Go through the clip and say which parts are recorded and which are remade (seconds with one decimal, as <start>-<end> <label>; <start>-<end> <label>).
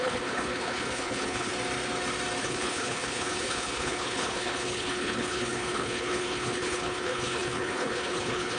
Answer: 0.0-1.5 remade; 1.5-2.4 recorded; 2.4-8.6 remade